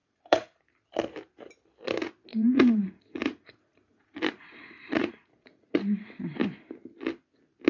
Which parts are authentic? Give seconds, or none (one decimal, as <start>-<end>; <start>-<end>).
0.6-2.3; 5.8-7.7